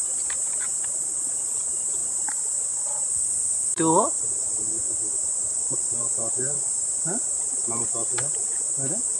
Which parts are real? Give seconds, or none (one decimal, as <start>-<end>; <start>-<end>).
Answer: 0.6-2.0; 3.1-5.4; 7.0-9.2